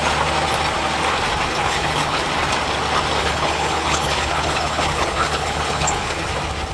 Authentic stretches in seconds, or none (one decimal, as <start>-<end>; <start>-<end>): 0.0-1.5; 2.2-3.2; 6.2-6.7